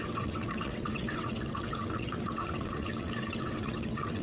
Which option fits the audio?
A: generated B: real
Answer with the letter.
A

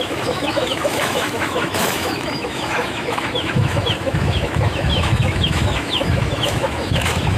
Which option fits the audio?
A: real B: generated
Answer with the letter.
B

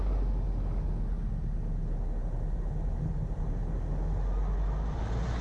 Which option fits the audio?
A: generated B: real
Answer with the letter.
B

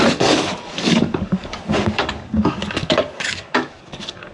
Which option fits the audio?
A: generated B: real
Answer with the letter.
A